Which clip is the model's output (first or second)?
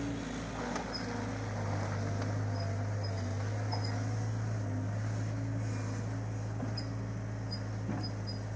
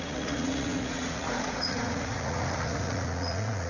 second